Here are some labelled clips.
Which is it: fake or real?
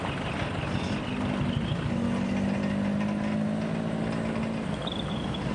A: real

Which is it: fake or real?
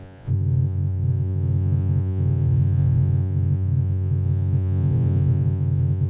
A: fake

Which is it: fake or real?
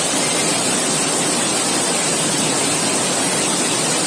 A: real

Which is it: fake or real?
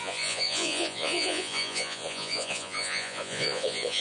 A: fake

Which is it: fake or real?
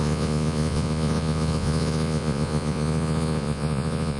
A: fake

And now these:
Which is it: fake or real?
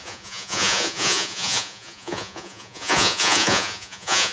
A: fake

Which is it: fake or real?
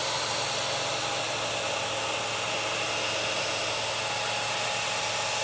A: real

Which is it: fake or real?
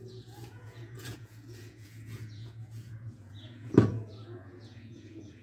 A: fake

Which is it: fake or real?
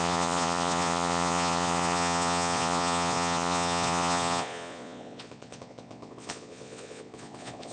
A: fake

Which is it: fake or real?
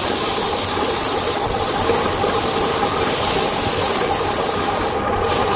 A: real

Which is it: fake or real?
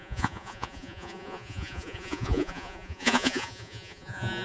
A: fake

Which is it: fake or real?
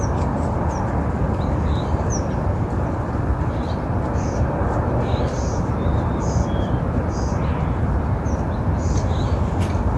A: real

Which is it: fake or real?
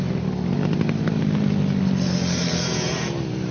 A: real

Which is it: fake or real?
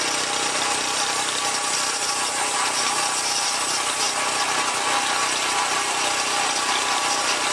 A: real